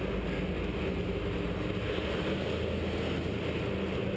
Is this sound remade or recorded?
recorded